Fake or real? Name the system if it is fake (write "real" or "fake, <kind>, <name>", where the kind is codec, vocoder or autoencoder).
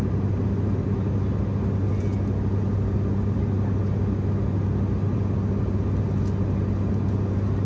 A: real